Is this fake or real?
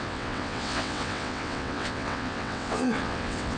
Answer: fake